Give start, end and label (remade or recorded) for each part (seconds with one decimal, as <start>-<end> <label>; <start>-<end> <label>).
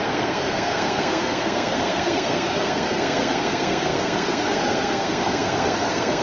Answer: 0.0-6.2 remade